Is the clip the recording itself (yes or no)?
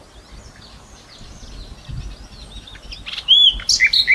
yes